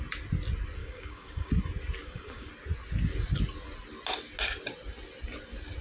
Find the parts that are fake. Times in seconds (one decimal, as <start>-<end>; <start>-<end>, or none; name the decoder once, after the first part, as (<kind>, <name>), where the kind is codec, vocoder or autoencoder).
0.8-1.5 (codec, DAC); 2.0-2.5